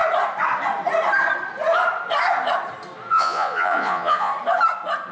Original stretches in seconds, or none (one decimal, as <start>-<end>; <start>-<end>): 0.0-3.1; 4.3-5.1